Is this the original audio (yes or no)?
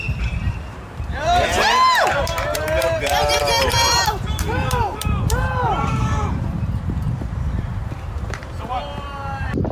no